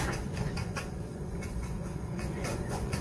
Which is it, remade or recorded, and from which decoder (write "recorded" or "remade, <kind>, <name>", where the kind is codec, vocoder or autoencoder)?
remade, vocoder, Vocos